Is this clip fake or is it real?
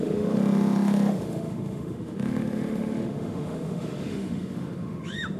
fake